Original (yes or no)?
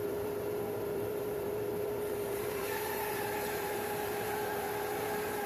no